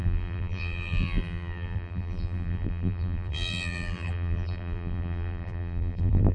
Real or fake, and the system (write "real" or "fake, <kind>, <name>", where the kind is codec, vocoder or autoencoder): fake, vocoder, BigVGAN v2